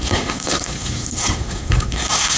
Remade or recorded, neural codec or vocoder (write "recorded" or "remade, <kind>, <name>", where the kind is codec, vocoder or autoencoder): remade, codec, SNAC